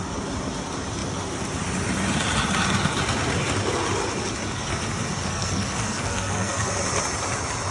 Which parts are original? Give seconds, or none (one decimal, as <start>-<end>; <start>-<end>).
0.0-5.2; 6.7-7.7